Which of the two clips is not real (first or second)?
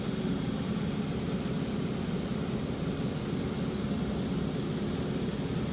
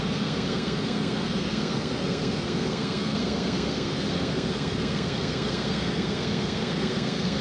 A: second